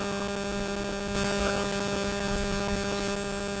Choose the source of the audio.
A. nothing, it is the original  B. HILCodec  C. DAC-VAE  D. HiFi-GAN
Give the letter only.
A